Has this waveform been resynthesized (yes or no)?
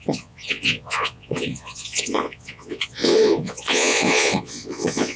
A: yes